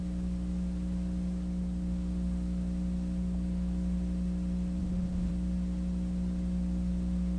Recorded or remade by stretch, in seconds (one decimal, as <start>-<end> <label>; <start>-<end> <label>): 0.0-4.8 recorded; 4.8-5.3 remade; 5.3-7.4 recorded